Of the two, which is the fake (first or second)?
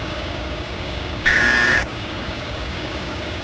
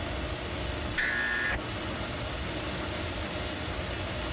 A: first